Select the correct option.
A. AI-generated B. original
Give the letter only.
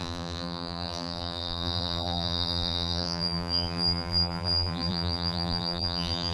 A